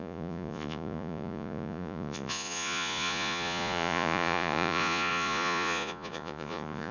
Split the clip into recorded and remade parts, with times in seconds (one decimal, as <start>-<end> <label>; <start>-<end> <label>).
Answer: 0.0-6.9 remade

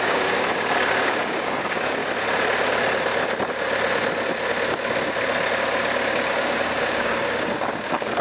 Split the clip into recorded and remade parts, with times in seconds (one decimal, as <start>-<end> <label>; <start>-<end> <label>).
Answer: 0.0-2.0 remade; 2.0-6.3 recorded; 6.3-8.2 remade

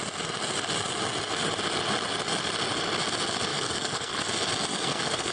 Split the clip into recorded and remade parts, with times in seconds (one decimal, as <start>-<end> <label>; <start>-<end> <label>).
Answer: 0.0-3.5 recorded; 3.5-4.2 remade; 4.2-4.7 recorded; 4.7-5.3 remade